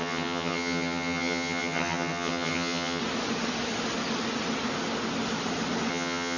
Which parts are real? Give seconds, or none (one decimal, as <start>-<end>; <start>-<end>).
3.0-5.9

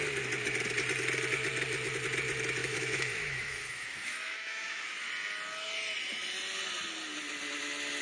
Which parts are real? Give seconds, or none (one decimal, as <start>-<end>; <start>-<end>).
0.0-2.6; 5.1-8.0

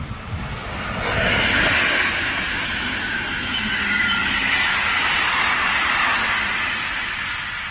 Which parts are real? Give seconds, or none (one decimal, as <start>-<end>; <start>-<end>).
0.0-2.5; 3.7-7.7

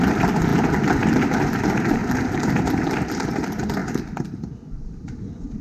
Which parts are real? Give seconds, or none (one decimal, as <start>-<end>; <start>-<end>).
2.0-2.5

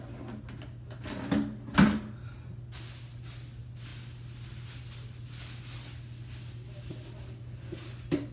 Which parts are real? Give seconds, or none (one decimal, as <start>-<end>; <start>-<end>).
0.0-8.3